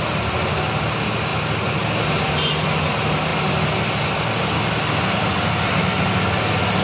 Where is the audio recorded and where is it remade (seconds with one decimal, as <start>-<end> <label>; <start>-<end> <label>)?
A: 0.0-6.8 recorded